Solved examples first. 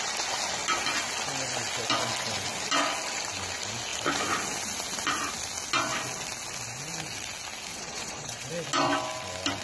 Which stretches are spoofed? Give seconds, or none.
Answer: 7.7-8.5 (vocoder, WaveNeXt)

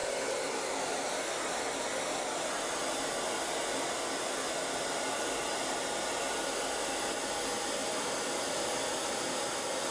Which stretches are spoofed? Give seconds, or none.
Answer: 7.8-8.4 (vocoder, BigVGAN v2)

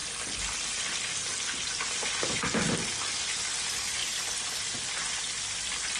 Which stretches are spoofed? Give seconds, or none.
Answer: none

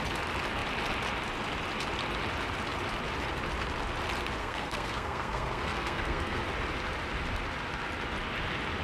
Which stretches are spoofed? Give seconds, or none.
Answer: 4.4-6.4 (codec, SNAC)

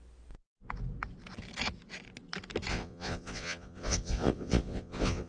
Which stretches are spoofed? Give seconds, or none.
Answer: 2.7-5.3 (vocoder, Vocos)

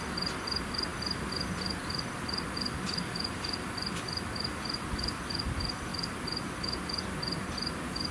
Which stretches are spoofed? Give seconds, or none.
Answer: none

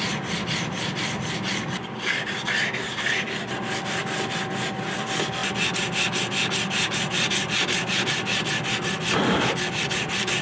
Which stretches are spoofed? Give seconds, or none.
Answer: none

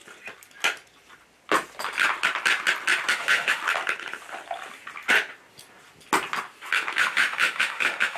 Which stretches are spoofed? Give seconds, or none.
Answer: 3.1-3.6 (autoencoder, DAC-VAE); 7.0-8.2